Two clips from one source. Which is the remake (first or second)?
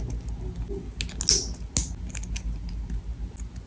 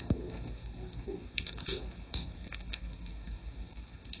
second